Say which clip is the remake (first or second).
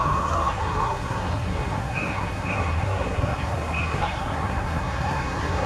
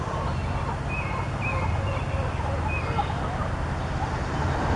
first